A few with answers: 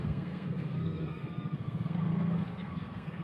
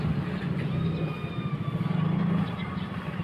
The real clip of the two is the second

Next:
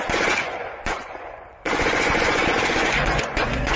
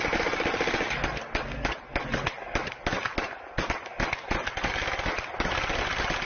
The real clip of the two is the second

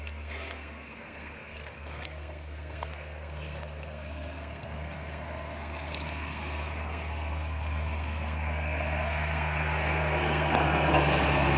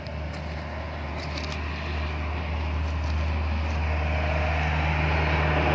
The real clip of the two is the second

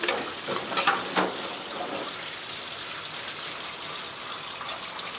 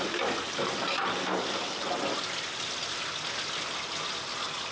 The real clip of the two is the second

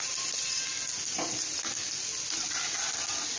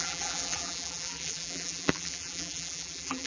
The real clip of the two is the first